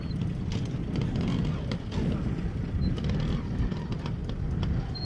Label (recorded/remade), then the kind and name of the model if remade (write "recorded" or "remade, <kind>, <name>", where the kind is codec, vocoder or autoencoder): recorded